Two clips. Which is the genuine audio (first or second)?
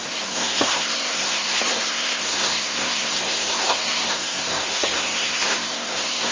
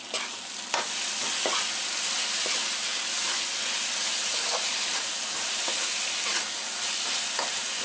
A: second